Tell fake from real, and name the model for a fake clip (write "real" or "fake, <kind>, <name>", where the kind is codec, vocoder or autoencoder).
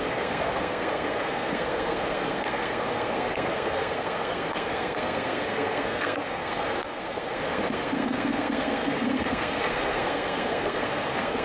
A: fake, codec, SNAC